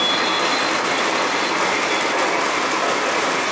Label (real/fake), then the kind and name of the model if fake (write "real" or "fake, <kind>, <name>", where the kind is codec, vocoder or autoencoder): real